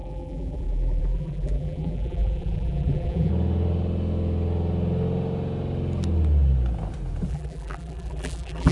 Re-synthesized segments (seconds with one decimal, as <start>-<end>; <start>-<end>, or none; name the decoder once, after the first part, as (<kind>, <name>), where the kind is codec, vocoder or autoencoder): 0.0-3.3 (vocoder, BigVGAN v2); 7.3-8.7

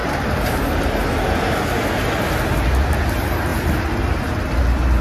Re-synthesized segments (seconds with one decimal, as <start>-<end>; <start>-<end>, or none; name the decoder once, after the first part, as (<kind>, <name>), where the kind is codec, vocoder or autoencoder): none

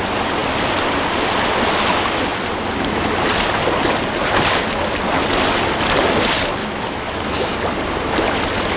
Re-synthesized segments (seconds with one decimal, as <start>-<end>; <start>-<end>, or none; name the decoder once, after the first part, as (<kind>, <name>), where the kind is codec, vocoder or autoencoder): 6.6-7.5 (autoencoder, DAC-VAE)